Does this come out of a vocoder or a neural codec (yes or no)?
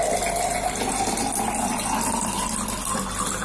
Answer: no